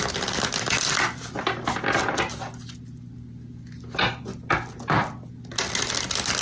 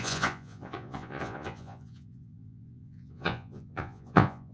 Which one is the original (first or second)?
first